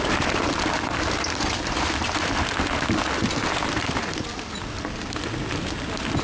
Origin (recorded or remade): recorded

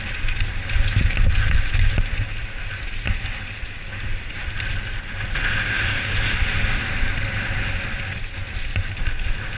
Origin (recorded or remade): recorded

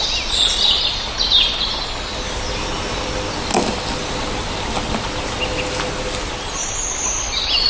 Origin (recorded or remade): recorded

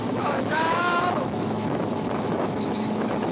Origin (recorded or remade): remade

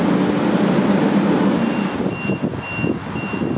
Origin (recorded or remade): recorded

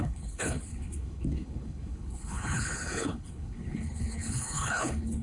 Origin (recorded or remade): remade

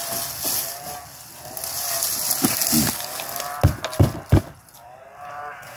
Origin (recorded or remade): recorded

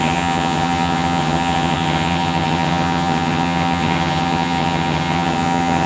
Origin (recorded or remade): remade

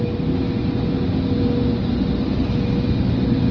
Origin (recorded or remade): recorded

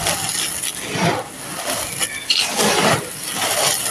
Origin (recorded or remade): remade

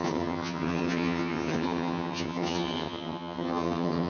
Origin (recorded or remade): remade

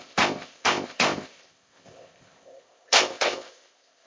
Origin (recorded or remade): remade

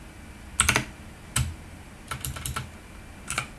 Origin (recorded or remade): recorded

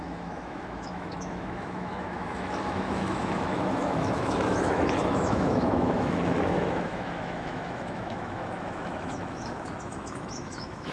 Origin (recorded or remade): remade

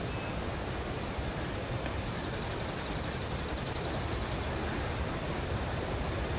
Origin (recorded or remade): recorded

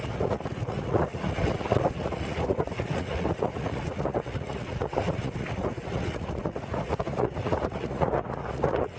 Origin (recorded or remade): remade